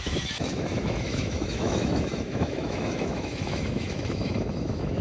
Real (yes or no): no